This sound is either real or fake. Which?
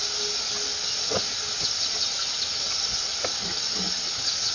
real